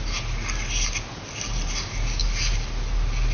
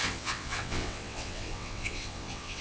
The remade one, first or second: second